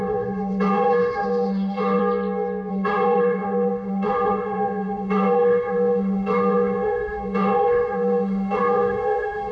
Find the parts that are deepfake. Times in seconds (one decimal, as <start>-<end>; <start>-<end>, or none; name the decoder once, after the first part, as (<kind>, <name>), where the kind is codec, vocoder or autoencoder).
0.0-2.0 (autoencoder, DAC-VAE); 2.7-9.5

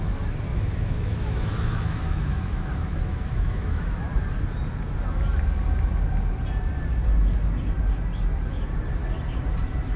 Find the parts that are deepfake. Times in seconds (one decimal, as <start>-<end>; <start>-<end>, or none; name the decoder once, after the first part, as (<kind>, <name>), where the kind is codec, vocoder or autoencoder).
0.5-3.8 (autoencoder, DAC-VAE)

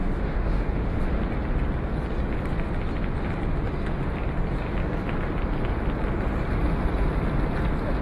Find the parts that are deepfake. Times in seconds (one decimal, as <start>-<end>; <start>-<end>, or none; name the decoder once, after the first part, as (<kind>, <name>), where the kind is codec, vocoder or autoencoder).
0.0-1.2 (autoencoder, DAC-VAE)

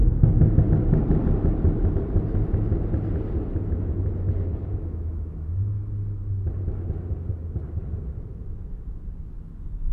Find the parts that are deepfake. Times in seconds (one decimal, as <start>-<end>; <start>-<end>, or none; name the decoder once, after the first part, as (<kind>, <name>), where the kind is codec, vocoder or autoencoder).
0.0-0.6 (autoencoder, DAC-VAE); 4.7-5.8